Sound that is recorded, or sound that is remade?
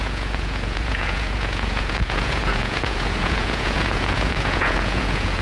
remade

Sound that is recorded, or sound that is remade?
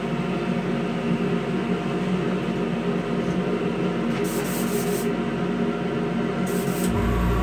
recorded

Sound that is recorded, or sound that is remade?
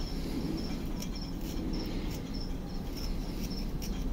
recorded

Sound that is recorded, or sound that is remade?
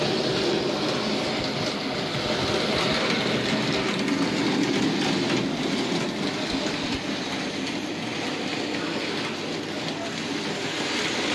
recorded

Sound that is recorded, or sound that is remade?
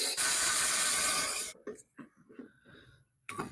remade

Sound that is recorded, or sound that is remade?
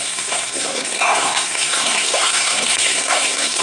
remade